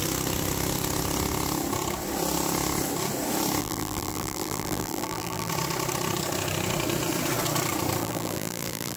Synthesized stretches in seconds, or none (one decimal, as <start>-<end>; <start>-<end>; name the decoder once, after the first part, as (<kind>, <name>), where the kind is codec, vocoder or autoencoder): 3.6-5.5 (vocoder, BigVGAN v2); 8.0-9.0